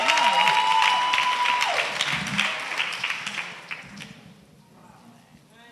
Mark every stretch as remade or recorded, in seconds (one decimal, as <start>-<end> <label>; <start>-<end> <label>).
0.0-5.7 recorded